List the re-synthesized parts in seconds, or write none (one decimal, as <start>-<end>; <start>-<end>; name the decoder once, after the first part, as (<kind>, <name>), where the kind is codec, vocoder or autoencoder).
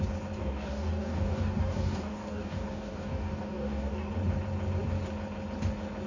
0.4-4.1 (codec, DAC)